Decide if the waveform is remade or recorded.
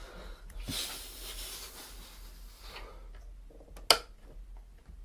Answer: recorded